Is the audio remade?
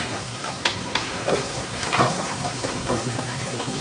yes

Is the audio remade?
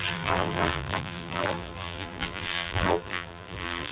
yes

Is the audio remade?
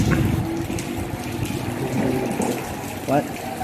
no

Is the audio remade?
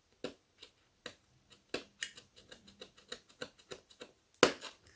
no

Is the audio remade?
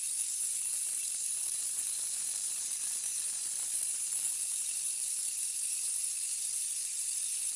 yes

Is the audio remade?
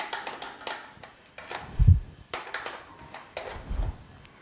no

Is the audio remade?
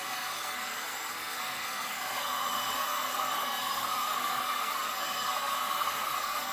yes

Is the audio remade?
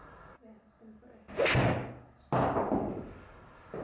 no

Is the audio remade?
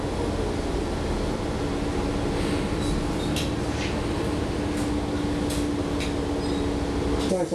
no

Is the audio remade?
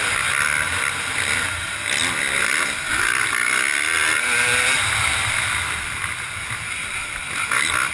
no